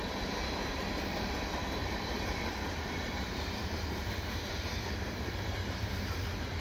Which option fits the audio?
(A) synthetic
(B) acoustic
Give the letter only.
A